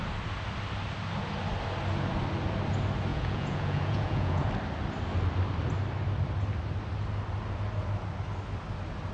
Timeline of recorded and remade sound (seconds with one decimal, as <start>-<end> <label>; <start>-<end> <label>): 0.0-3.1 recorded; 3.1-4.4 remade; 4.4-9.1 recorded